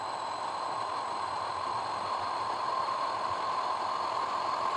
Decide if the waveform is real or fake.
real